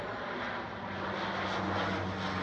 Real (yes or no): yes